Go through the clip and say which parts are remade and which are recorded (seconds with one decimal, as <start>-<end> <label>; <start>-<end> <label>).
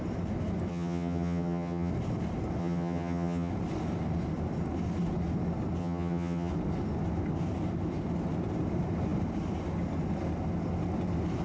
0.0-0.7 recorded; 0.7-1.9 remade; 1.9-2.6 recorded; 2.6-3.5 remade; 3.5-5.8 recorded; 5.8-6.5 remade; 6.5-11.4 recorded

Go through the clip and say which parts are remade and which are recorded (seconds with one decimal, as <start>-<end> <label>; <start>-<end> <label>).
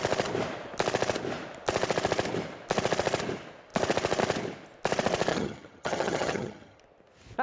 0.0-5.3 recorded; 5.3-6.8 remade; 6.8-7.4 recorded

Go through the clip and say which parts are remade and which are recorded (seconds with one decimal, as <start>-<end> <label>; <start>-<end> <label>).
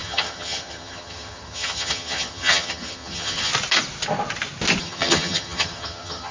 0.0-3.5 remade; 3.5-4.8 recorded; 4.8-6.3 remade